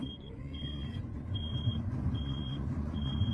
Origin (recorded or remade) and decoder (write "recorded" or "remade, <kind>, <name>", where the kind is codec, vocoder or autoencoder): remade, vocoder, Vocos